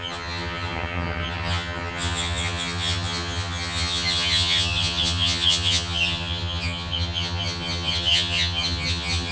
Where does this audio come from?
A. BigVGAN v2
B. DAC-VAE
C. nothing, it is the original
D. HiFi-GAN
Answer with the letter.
D